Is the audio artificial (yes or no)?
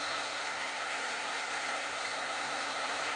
yes